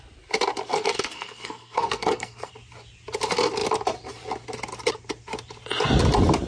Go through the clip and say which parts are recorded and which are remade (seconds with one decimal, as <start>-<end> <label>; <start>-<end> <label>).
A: 0.0-0.7 recorded; 0.7-2.5 remade; 2.5-6.5 recorded